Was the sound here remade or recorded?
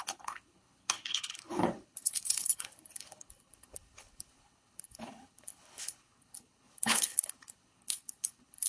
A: remade